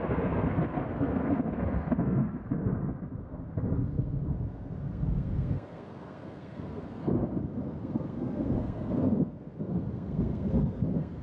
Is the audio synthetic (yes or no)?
yes